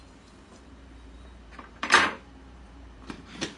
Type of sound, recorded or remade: remade